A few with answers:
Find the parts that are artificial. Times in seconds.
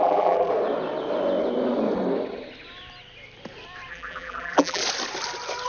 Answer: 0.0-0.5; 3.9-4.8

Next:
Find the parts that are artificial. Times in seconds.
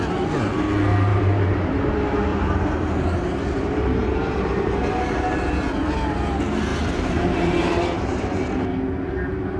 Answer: 1.1-1.9; 2.3-5.2; 6.7-8.2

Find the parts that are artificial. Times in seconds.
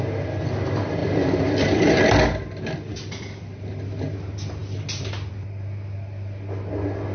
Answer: 1.0-2.0; 2.9-3.4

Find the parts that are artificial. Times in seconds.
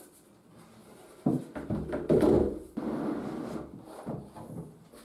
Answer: 0.8-1.4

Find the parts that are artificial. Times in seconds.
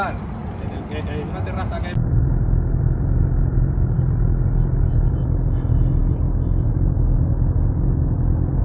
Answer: none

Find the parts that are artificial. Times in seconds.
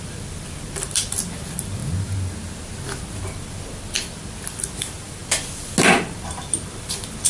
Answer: 0.0-1.8; 3.2-5.2; 5.9-7.3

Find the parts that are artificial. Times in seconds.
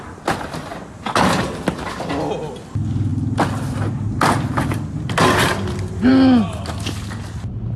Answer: none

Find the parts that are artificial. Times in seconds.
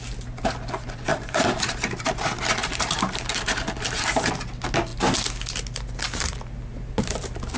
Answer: 1.1-2.1; 2.6-4.3